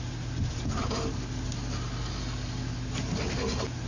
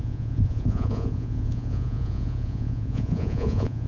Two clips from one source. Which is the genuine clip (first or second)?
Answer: first